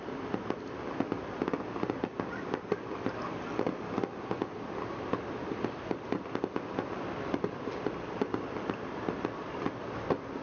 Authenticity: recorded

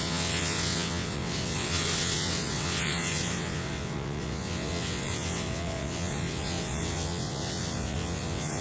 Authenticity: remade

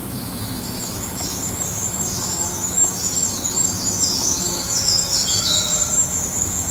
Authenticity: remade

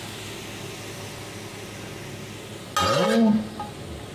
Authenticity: recorded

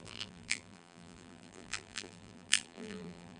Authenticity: remade